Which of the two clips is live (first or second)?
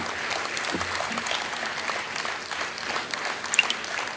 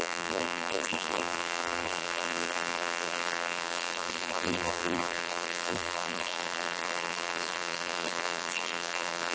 first